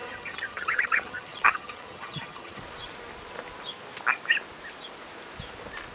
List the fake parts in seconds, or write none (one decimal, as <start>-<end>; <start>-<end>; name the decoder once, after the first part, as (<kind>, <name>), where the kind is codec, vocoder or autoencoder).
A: 0.0-2.6 (vocoder, HiFi-GAN)